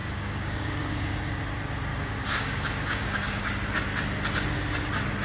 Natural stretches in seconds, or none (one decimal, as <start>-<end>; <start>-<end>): 1.4-1.9; 3.4-5.2